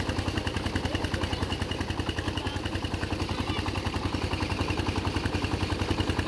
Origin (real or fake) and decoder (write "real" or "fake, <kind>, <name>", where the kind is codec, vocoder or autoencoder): real